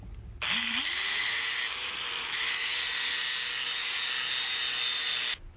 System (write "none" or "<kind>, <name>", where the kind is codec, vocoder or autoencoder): none